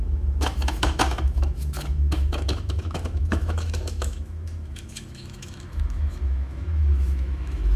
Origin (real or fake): fake